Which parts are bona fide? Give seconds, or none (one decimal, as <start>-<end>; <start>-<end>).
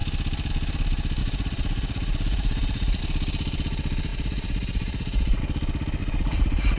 0.0-1.2; 3.0-4.1; 5.4-6.0